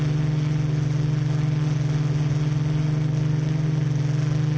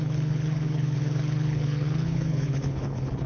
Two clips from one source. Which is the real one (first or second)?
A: first